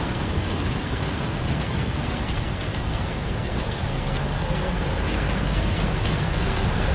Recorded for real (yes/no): no